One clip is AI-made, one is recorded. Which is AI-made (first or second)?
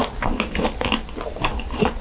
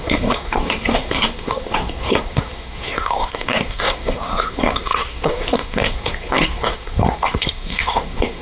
second